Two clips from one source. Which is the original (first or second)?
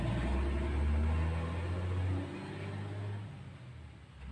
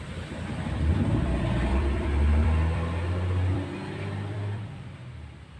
first